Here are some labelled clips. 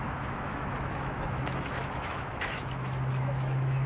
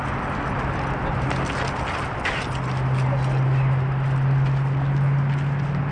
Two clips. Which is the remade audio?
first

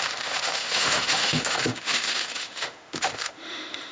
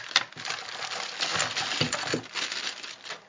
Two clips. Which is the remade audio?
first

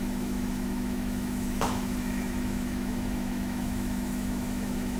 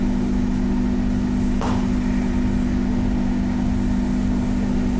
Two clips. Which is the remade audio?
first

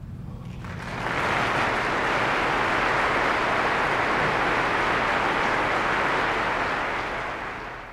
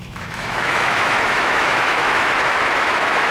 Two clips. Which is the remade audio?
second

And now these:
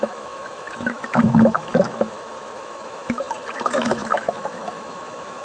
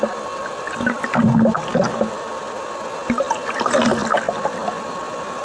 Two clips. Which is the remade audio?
first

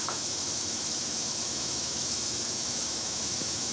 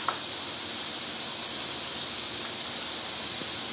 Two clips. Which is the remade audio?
first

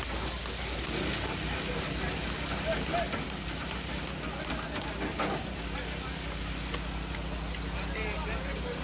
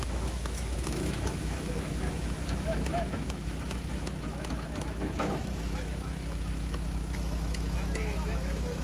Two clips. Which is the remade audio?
second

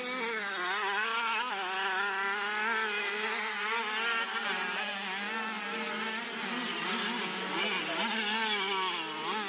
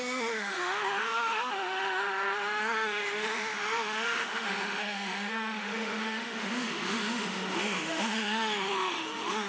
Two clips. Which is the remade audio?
second